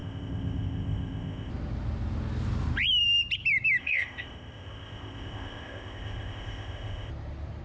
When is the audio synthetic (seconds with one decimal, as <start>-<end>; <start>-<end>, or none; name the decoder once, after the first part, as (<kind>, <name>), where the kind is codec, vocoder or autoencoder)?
0.0-1.5 (codec, ZipCodec); 3.8-7.1